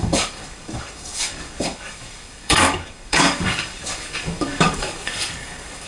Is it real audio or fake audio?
fake